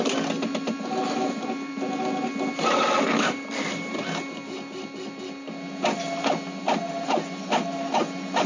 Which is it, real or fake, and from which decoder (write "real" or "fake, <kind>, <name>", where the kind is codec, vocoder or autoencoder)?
real